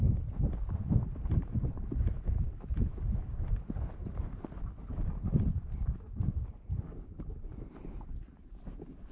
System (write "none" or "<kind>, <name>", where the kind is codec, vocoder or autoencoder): vocoder, BigVGAN v2